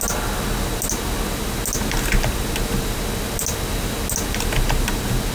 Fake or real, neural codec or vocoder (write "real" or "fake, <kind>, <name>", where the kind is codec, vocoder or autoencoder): real